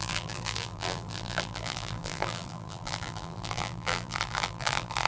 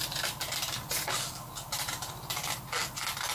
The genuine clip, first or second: second